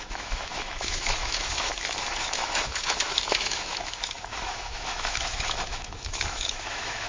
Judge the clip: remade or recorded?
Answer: remade